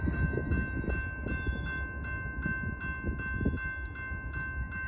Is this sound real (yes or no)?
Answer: yes